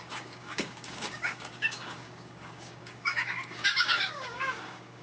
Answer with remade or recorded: remade